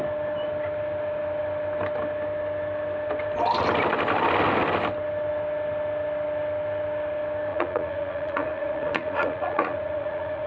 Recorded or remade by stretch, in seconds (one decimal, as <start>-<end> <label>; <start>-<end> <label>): 0.0-7.5 recorded; 7.5-10.5 remade

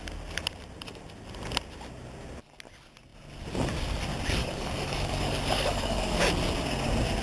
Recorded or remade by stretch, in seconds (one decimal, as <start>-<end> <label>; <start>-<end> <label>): 0.0-4.4 recorded; 4.4-6.2 remade; 6.2-7.2 recorded

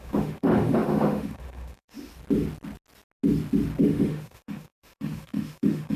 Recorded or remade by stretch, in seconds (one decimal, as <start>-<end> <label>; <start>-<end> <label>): 0.0-2.1 remade; 2.1-3.8 recorded; 3.8-6.0 remade